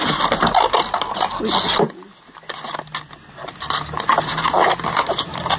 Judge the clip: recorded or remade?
recorded